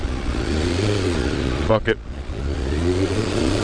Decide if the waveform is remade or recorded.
remade